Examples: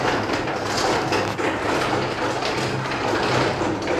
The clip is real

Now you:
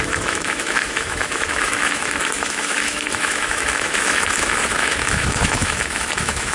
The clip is fake